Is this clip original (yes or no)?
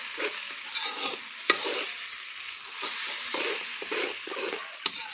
yes